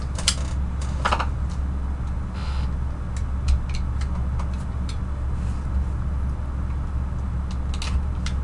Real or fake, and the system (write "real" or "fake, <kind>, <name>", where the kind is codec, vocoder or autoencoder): real